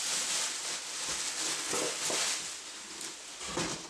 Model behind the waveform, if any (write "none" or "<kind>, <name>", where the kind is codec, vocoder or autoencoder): none